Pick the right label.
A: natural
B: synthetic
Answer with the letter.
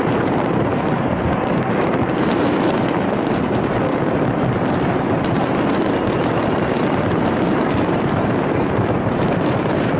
B